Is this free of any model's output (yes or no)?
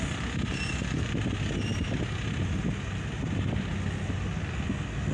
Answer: yes